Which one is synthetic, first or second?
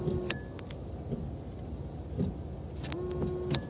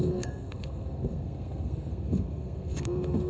second